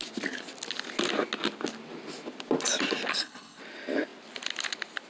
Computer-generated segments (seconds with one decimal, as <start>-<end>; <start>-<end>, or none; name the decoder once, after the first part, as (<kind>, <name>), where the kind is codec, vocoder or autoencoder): 3.1-3.6 (codec, HILCodec)